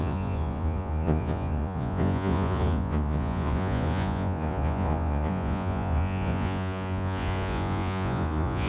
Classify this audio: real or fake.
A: fake